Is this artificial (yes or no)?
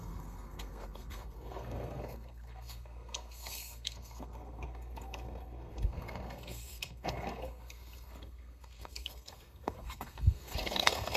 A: yes